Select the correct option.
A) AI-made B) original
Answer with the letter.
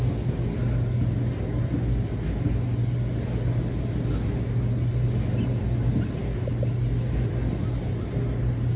B